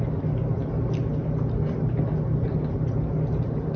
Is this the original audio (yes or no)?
yes